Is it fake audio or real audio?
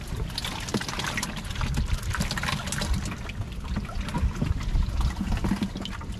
real